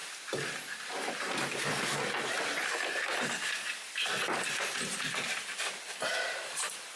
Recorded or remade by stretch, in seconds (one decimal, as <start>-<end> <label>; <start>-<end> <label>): 0.0-0.6 recorded; 0.6-6.1 remade; 6.1-7.0 recorded